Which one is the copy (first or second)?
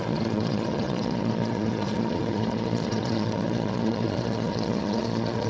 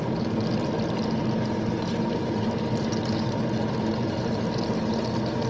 first